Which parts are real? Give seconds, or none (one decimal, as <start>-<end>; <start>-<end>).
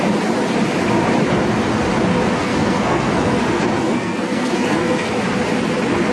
0.0-2.4; 5.1-6.1